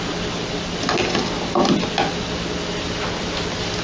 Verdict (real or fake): real